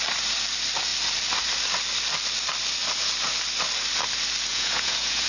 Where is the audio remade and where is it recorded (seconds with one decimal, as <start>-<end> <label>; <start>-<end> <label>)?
0.0-4.5 recorded; 4.5-5.3 remade